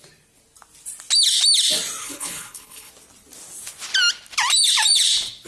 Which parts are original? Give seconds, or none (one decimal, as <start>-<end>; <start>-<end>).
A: 0.0-2.0; 2.9-5.5